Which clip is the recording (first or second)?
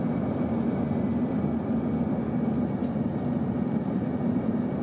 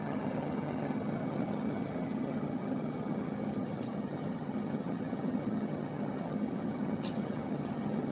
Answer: first